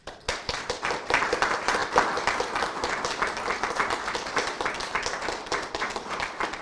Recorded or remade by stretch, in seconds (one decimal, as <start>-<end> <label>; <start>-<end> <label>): 0.0-1.8 remade; 1.8-5.8 recorded; 5.8-6.6 remade